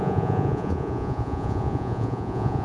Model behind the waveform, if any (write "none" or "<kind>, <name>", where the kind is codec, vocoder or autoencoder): vocoder, Vocos